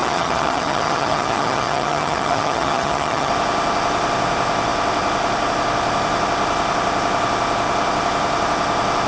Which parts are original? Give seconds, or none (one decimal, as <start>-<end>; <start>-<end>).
3.3-9.1